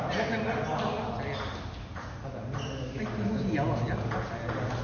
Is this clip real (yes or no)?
yes